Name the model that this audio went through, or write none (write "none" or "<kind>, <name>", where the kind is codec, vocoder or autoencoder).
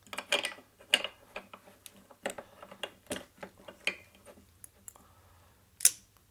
none